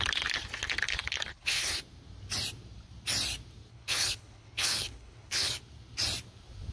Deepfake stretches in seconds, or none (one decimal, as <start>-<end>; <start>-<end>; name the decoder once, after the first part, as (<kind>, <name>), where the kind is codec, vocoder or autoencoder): 1.3-1.8 (codec, HILCodec); 3.7-5.6